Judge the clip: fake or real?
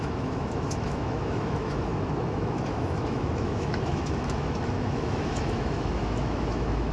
fake